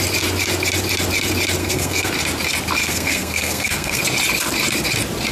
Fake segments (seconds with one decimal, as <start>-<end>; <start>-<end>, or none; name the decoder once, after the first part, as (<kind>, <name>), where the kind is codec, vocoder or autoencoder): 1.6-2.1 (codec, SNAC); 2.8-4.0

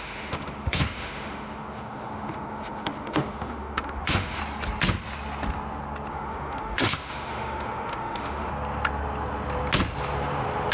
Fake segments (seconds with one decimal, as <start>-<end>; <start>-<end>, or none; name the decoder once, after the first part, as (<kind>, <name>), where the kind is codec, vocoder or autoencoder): 0.0-4.4 (autoencoder, DAC-VAE); 6.1-8.5

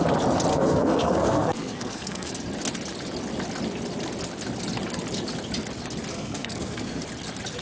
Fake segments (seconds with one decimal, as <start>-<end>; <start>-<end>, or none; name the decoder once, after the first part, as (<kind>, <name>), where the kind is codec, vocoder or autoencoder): 0.5-2.3 (codec, SNAC); 6.1-7.0